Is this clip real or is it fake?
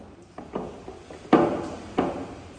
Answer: real